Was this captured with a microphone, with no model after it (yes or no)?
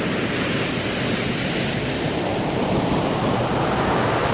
yes